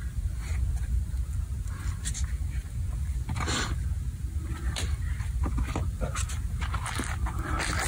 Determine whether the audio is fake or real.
real